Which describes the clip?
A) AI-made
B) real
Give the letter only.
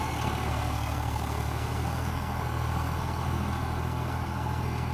A